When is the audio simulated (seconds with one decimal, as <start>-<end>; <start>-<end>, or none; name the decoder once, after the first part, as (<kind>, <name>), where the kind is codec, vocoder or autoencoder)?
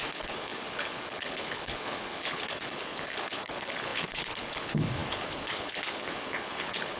0.0-7.0 (codec, HILCodec)